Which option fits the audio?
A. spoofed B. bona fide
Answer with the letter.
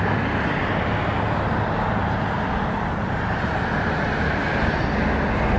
B